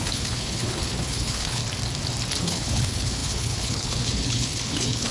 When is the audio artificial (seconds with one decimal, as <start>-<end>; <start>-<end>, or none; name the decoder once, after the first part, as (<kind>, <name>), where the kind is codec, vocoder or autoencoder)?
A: 0.0-1.6 (codec, HILCodec); 2.4-5.1